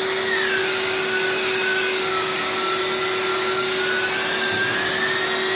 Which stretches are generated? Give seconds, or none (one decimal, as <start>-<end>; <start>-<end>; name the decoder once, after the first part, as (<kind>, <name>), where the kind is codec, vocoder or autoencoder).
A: 0.6-2.8 (codec, DAC); 3.3-3.8